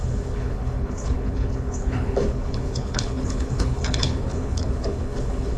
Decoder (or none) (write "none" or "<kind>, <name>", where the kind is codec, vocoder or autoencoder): codec, HILCodec